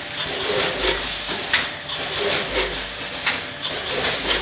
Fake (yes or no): no